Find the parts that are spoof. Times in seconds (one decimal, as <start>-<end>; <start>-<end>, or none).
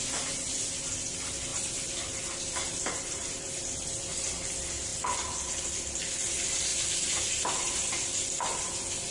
1.5-4.2; 6.7-7.9